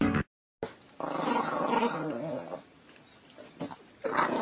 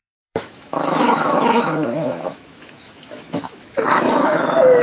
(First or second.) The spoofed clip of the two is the second